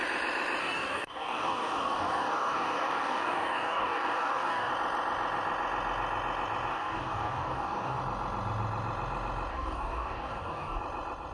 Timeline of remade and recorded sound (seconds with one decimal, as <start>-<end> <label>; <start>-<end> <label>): 0.0-0.6 recorded; 0.6-4.7 remade; 4.7-6.7 recorded; 6.7-8.0 remade; 8.0-9.5 recorded; 9.5-10.8 remade; 10.8-11.3 recorded